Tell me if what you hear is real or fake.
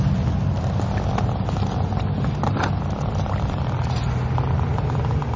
real